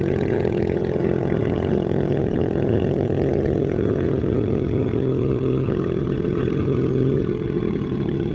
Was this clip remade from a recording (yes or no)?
yes